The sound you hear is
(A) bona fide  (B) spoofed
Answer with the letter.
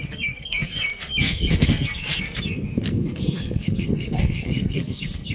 B